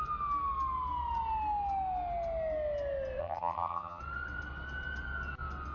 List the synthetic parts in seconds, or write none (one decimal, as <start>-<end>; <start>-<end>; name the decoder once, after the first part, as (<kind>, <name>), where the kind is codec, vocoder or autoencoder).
3.2-4.0 (vocoder, HiFi-GAN)